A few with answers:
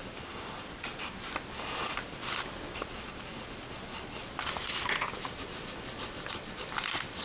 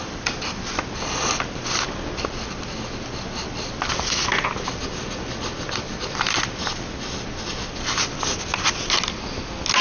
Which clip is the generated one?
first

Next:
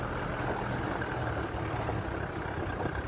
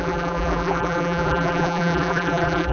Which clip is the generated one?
second